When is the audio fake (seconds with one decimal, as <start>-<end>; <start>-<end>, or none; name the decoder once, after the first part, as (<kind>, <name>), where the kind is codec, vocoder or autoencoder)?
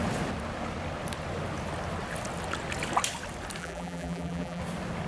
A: 3.6-4.6 (vocoder, BigVGAN v2)